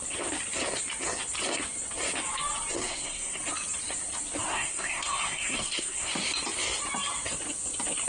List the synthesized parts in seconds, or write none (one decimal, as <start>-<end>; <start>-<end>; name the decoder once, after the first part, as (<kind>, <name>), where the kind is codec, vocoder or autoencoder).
2.8-3.4 (codec, SNAC); 4.5-6.1